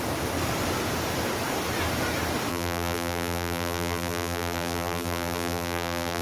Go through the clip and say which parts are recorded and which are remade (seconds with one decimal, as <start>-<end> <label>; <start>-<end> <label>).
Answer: 0.0-2.5 recorded; 2.5-6.2 remade